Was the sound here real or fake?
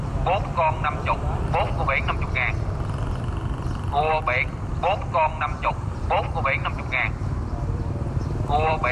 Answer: fake